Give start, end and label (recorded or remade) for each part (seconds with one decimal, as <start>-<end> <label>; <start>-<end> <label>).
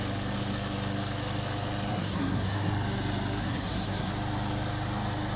0.0-1.9 recorded; 1.9-2.7 remade; 2.7-3.4 recorded; 3.4-4.1 remade; 4.1-5.4 recorded